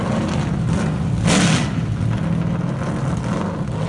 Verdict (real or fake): real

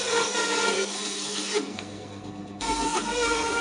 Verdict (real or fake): fake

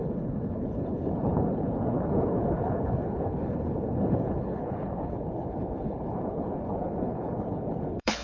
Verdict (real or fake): fake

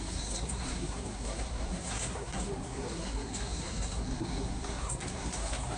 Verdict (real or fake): fake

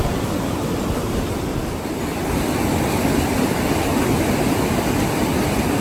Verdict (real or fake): real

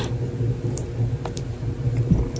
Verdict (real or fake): real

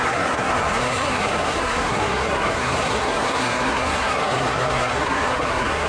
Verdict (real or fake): fake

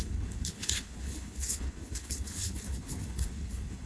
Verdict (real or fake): fake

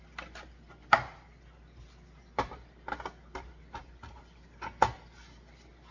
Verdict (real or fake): real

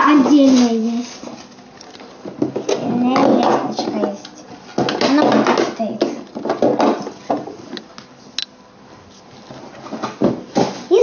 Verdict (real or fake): real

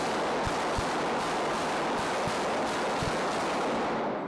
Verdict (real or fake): real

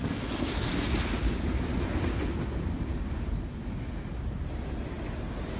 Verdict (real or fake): real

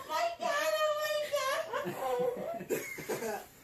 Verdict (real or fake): real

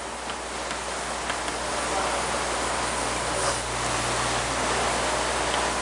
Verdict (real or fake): real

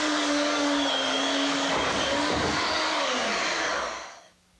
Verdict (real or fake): fake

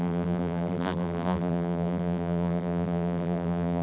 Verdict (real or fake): fake